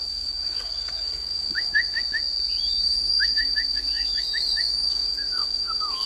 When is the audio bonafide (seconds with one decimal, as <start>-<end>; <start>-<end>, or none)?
1.9-2.6